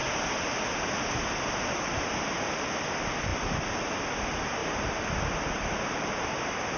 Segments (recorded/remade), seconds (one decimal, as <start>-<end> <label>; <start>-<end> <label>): 0.0-6.8 recorded